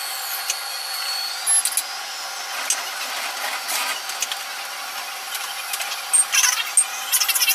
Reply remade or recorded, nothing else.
recorded